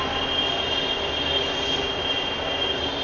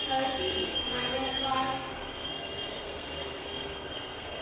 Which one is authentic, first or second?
first